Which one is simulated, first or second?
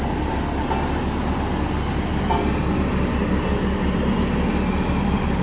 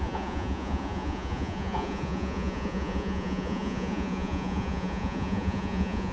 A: second